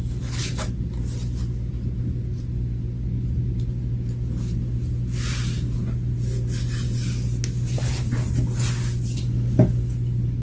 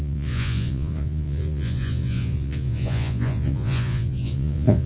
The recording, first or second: first